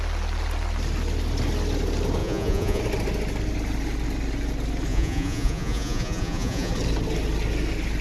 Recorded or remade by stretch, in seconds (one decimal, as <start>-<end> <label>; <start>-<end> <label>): 0.0-2.2 recorded; 2.2-2.8 remade; 2.8-4.9 recorded; 4.9-6.7 remade; 6.7-8.0 recorded

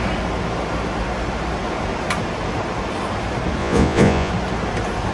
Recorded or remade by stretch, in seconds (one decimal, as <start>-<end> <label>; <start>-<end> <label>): 0.0-3.6 recorded; 3.6-4.3 remade; 4.3-5.1 recorded

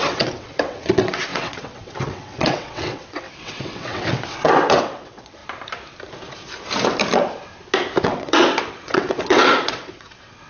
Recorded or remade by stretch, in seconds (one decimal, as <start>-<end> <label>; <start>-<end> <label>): 0.0-5.4 remade; 5.4-8.0 recorded; 8.0-10.5 remade

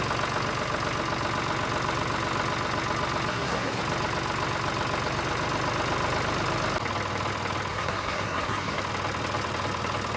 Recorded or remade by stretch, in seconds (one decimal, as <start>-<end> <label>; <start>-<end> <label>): 0.0-3.3 recorded; 3.3-3.8 remade; 3.8-7.7 recorded; 7.7-8.8 remade; 8.8-10.2 recorded

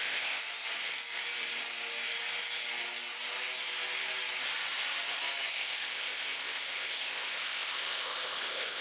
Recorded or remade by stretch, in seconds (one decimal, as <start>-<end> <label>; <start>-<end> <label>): 0.0-0.4 remade; 0.4-5.5 recorded; 5.5-8.8 remade

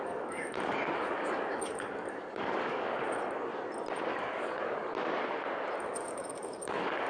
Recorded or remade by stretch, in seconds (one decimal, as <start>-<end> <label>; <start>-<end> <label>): 0.0-3.5 remade; 3.5-4.1 recorded; 4.1-4.9 remade; 4.9-5.8 recorded; 5.8-7.1 remade